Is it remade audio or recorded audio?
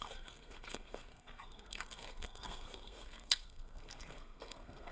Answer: remade